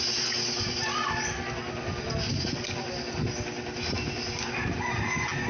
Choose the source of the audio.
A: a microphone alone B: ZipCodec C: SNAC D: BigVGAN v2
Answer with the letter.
A